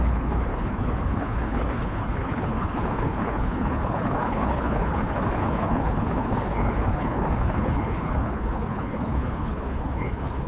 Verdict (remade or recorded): remade